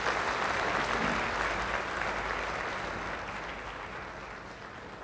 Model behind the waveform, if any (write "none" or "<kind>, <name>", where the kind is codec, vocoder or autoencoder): none